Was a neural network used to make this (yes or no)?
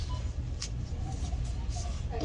yes